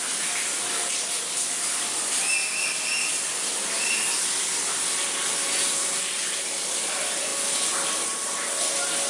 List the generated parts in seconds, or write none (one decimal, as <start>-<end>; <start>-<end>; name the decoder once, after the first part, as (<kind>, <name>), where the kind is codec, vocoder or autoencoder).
none